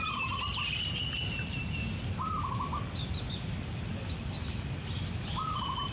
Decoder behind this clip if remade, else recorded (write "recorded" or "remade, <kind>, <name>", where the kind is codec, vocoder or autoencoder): remade, vocoder, BigVGAN v2